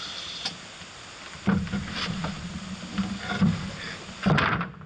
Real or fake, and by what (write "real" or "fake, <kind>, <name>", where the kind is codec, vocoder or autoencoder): real